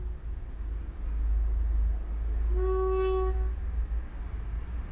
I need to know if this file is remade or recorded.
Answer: recorded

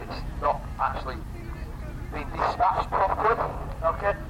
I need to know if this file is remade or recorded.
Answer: recorded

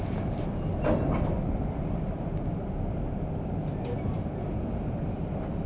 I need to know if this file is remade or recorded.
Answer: recorded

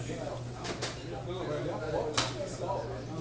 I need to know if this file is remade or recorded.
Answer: recorded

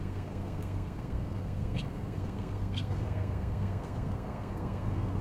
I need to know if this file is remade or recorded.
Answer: remade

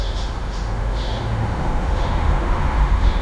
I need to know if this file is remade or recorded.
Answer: remade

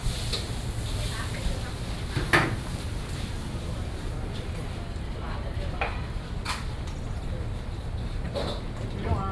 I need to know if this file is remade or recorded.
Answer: recorded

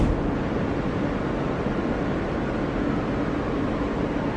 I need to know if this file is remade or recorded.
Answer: recorded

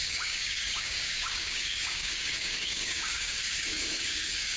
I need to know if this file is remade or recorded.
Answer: remade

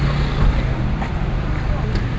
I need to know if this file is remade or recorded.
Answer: recorded